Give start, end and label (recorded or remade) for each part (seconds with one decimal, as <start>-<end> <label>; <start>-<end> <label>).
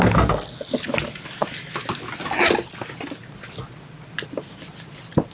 0.0-5.3 recorded